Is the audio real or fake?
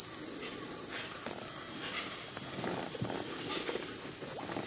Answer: real